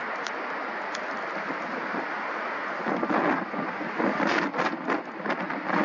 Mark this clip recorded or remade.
recorded